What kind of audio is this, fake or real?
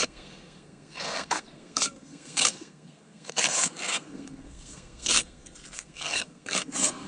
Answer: fake